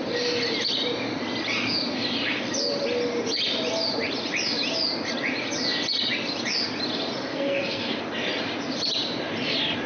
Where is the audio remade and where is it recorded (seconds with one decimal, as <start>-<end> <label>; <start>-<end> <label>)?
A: 0.0-7.3 recorded; 7.3-8.0 remade; 8.0-9.9 recorded